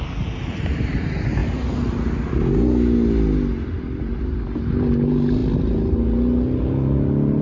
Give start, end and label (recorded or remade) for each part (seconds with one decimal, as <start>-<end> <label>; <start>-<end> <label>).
0.0-7.4 recorded

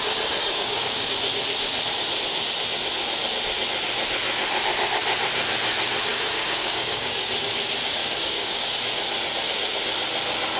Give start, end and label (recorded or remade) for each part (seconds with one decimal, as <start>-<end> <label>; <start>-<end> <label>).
0.0-0.4 recorded; 0.4-1.1 remade; 1.1-6.1 recorded; 6.1-7.3 remade; 7.3-8.0 recorded; 8.0-8.7 remade; 8.7-10.6 recorded

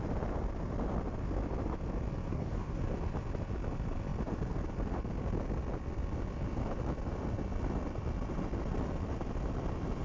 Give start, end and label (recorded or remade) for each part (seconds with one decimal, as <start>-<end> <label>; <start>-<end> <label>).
0.0-2.3 recorded; 2.3-2.8 remade; 2.8-10.0 recorded